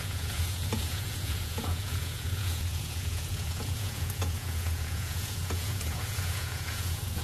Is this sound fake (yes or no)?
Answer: yes